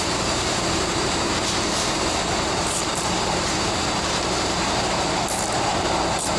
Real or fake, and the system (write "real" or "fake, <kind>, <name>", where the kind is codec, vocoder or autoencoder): fake, vocoder, BigVGAN v2